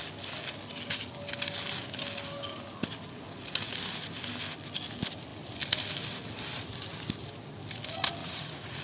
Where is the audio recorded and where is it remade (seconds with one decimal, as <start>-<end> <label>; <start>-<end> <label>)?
0.0-8.2 recorded; 8.2-8.8 remade